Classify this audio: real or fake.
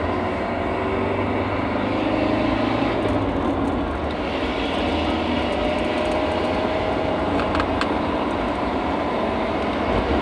real